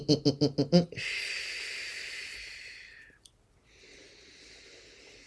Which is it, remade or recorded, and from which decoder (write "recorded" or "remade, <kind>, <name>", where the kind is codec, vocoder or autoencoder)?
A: recorded